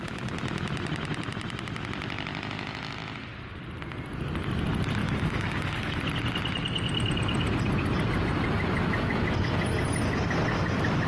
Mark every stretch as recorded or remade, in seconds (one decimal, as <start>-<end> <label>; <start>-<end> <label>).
0.0-5.0 recorded; 5.0-6.0 remade; 6.0-11.1 recorded